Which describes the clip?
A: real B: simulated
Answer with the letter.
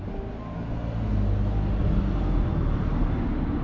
A